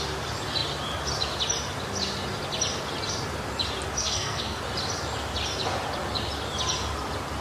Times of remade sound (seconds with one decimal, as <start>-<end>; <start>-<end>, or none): 4.0-4.6